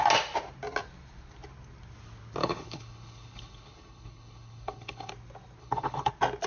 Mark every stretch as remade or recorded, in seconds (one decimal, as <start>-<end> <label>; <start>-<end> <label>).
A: 0.0-2.4 recorded; 2.4-5.1 remade; 5.1-5.6 recorded; 5.6-6.1 remade; 6.1-6.5 recorded